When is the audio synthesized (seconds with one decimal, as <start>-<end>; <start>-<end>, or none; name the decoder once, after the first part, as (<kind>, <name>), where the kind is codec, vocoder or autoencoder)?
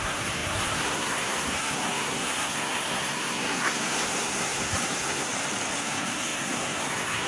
0.0-5.3 (codec, SNAC); 5.8-7.3